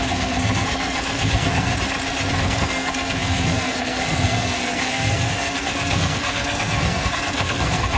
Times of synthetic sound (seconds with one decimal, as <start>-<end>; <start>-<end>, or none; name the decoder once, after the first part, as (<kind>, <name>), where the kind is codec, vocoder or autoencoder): 0.0-1.7 (codec, SNAC); 2.3-8.0